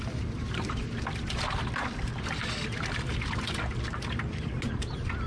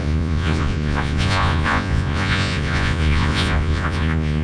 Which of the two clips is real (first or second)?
first